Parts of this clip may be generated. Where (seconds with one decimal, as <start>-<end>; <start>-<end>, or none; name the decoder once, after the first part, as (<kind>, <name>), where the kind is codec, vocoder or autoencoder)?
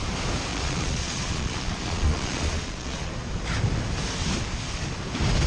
0.5-3.1 (vocoder, Vocos)